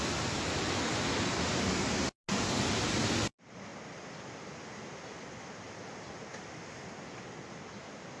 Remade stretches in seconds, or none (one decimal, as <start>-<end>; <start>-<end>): none